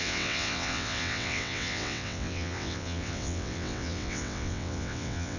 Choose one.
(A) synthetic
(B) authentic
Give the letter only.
A